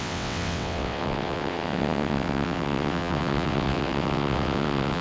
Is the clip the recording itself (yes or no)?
no